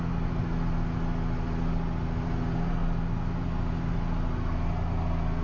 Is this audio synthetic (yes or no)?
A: no